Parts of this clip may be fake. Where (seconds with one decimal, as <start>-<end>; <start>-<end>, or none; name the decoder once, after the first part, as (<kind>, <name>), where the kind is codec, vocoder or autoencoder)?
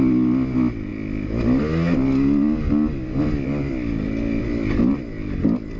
none